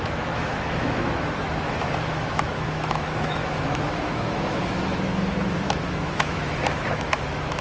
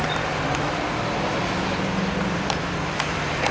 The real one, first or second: second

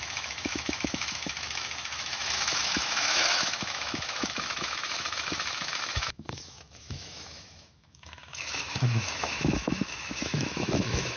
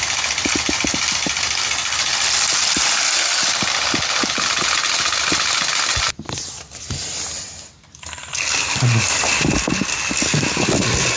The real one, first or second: second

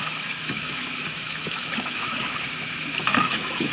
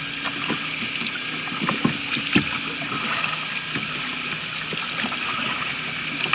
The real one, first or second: second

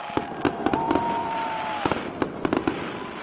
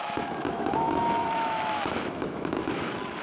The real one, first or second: first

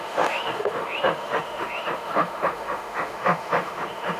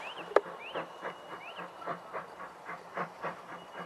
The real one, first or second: second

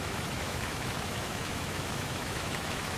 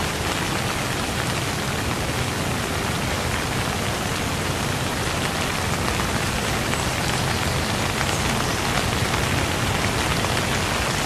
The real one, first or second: second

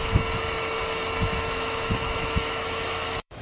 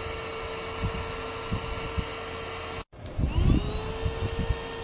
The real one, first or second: second